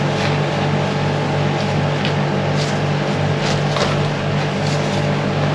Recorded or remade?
recorded